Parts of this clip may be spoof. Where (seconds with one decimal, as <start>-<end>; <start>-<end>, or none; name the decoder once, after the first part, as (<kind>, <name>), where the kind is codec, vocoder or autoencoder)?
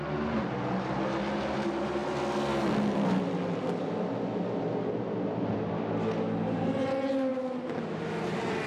none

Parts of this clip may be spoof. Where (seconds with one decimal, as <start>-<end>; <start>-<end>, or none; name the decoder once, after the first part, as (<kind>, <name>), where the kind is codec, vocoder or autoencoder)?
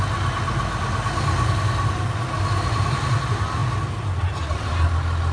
none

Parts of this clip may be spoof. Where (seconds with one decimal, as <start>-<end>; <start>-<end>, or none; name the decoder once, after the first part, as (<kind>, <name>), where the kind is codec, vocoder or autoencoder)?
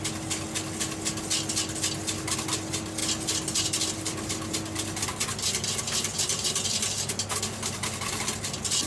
none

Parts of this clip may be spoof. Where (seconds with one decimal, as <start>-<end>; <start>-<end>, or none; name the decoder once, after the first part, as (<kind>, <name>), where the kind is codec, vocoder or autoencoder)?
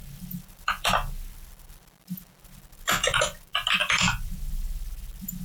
0.0-5.4 (vocoder, BigVGAN v2)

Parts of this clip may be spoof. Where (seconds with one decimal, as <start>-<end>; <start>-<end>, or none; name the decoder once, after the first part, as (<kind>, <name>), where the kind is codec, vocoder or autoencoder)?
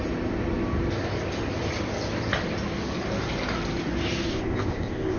4.3-5.2 (codec, ZipCodec)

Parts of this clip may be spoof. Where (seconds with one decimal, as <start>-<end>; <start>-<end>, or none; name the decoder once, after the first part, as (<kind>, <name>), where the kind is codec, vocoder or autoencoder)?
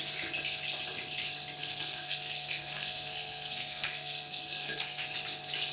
1.6-5.0 (codec, SNAC)